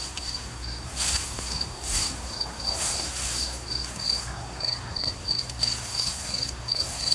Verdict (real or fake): fake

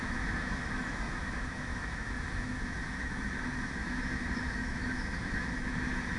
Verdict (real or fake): fake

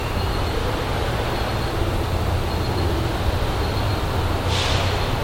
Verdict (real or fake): real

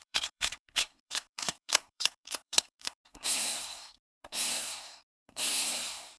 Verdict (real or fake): fake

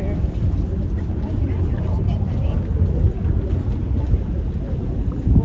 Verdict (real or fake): real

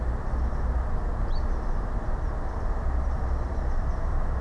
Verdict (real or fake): real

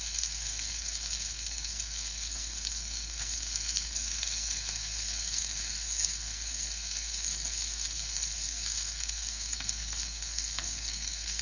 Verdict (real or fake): fake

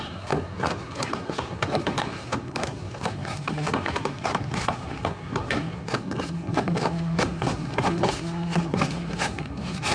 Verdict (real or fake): fake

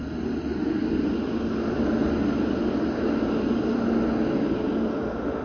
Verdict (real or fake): real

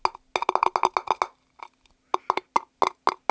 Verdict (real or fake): real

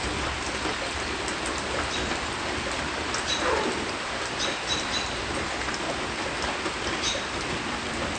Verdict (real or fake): real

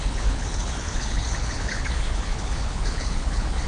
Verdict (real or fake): fake